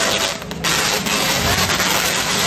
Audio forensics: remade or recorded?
recorded